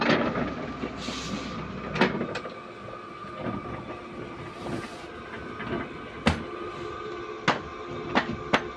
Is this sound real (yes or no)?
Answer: yes